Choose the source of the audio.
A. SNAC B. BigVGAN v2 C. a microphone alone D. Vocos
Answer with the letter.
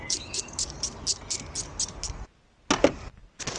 C